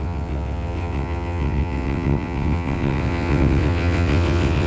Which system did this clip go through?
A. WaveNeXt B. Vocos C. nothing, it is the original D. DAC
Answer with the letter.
A